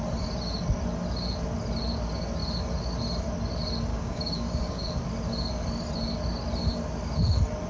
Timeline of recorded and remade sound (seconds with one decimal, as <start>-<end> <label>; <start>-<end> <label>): 0.0-3.9 recorded; 3.9-4.9 remade; 4.9-7.7 recorded